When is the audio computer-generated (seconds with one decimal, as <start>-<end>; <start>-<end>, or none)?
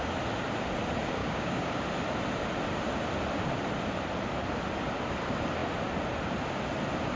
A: 1.2-1.8